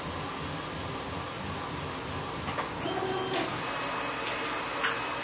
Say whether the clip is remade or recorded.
recorded